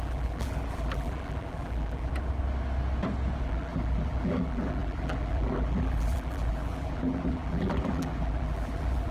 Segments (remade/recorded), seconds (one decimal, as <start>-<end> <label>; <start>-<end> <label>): 0.0-2.1 remade; 2.1-3.4 recorded; 3.4-9.1 remade